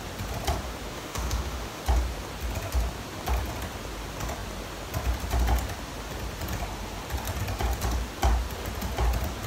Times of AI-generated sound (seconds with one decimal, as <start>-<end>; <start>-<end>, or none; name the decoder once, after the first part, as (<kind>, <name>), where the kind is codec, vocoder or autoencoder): 0.9-1.8 (autoencoder, DAC-VAE)